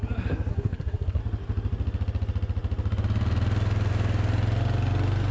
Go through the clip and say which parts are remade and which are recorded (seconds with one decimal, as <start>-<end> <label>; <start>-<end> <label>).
0.0-0.5 recorded; 0.5-1.2 remade; 1.2-5.3 recorded